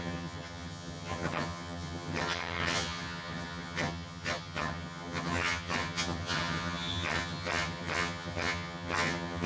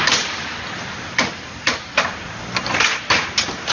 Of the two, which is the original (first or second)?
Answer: second